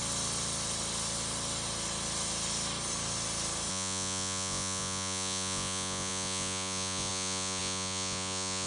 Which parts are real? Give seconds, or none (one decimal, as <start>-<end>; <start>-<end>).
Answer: 0.0-3.7